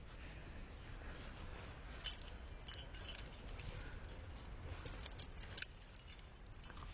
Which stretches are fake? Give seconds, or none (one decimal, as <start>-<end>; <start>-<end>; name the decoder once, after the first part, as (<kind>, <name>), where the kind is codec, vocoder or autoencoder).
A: none